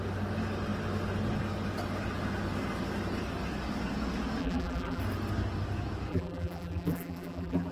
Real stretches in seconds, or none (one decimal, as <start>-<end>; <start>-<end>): 0.0-4.4; 5.0-6.1